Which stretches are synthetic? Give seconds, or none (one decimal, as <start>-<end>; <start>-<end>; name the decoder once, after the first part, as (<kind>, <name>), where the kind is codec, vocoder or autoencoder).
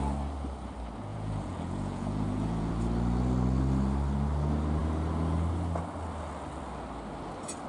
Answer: 1.1-2.7 (vocoder, Vocos)